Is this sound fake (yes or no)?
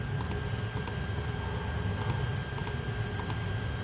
no